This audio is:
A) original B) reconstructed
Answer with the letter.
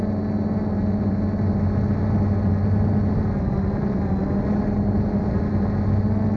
A